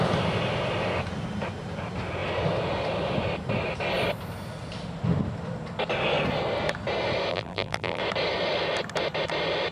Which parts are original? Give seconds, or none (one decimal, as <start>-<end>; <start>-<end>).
0.0-7.3; 8.0-9.7